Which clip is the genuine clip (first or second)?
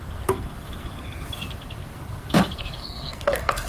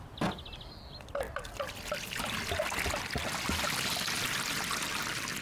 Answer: second